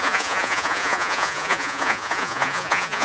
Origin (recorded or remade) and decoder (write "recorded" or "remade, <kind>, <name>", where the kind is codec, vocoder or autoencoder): remade, vocoder, Vocos